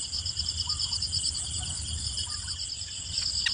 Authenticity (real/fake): real